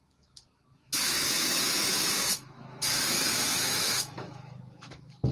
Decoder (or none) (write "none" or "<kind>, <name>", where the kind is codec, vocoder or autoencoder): autoencoder, DAC-VAE